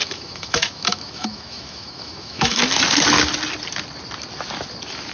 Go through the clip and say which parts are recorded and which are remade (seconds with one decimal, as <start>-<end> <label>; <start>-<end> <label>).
0.0-2.6 remade; 2.6-5.1 recorded

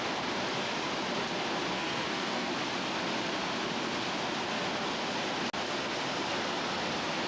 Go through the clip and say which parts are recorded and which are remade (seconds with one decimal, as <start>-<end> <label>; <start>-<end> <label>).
0.0-1.7 recorded; 1.7-2.5 remade; 2.5-7.3 recorded

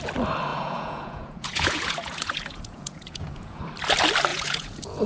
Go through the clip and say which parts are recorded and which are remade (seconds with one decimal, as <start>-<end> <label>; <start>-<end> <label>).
0.0-0.5 recorded; 0.5-3.6 remade; 3.6-4.3 recorded; 4.3-5.1 remade